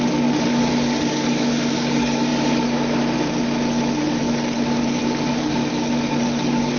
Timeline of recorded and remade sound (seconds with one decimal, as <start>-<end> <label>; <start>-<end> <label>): 0.0-2.3 remade; 2.3-4.2 recorded; 4.2-6.8 remade